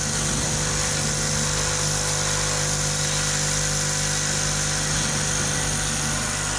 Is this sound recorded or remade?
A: recorded